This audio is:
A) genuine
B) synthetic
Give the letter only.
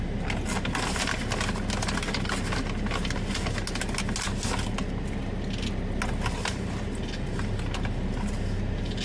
A